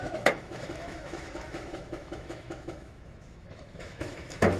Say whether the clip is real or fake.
fake